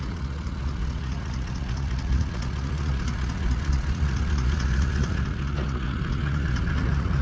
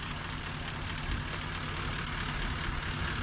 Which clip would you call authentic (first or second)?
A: second